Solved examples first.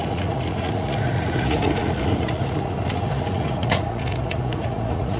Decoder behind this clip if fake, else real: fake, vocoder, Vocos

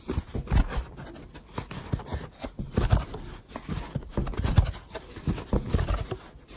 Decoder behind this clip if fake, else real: real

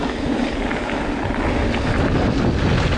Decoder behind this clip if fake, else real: real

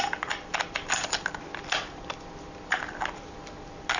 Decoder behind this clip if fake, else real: real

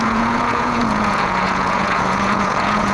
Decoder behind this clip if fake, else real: fake, vocoder, Vocos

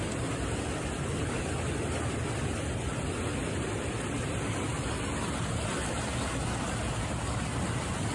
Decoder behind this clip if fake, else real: real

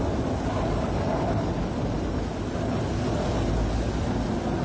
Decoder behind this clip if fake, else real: real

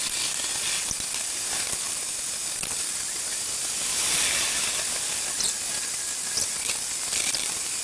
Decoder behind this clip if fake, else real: real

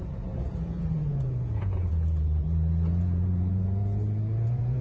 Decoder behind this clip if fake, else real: fake, vocoder, Vocos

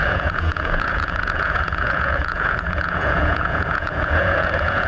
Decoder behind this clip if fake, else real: fake, vocoder, Vocos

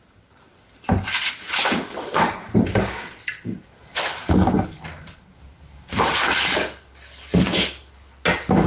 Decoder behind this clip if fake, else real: real